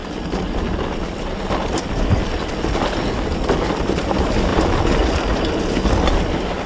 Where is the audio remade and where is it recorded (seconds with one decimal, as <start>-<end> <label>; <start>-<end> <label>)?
0.0-4.5 recorded; 4.5-5.5 remade; 5.5-6.7 recorded